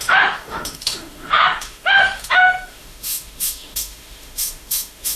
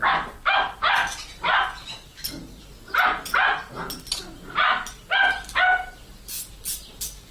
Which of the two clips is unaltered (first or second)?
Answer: second